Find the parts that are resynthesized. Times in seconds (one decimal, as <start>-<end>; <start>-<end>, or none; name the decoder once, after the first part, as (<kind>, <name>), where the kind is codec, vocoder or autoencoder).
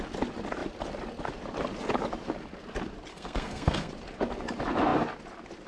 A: 3.1-3.9 (codec, SNAC)